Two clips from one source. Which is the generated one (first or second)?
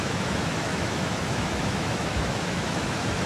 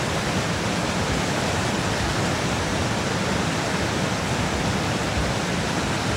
first